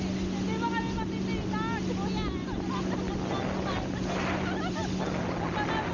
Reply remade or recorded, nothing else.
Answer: recorded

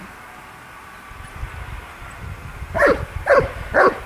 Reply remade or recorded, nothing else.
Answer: remade